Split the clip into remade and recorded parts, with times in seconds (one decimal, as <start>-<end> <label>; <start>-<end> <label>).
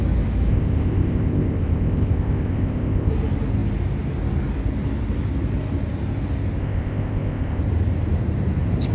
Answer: 0.0-0.5 recorded; 0.5-3.1 remade; 3.1-6.6 recorded; 6.6-7.6 remade; 7.6-8.9 recorded